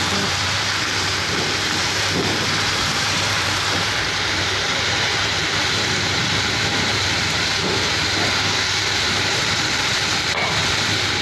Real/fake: fake